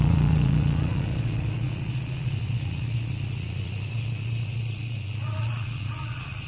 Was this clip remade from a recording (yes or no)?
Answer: yes